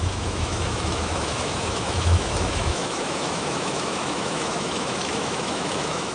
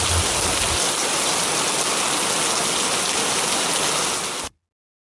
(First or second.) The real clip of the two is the second